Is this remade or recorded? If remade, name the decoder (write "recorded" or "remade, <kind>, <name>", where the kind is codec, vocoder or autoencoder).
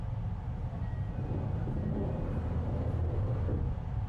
recorded